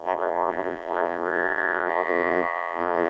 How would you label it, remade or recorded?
remade